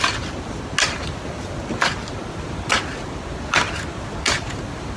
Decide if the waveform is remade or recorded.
recorded